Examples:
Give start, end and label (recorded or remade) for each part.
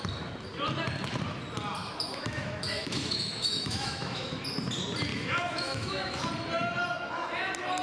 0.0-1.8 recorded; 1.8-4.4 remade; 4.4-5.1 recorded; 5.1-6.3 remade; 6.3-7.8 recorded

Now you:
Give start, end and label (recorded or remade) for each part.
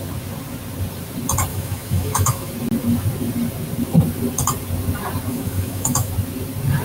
0.0-1.5 recorded; 1.5-2.5 remade; 2.5-5.3 recorded; 5.3-6.1 remade; 6.1-6.8 recorded